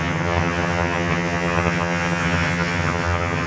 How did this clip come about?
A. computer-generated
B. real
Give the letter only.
A